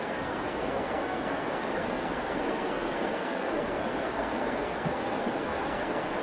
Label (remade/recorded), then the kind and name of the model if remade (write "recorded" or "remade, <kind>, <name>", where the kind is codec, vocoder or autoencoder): remade, codec, SNAC